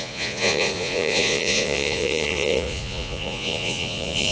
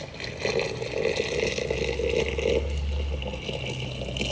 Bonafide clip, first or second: second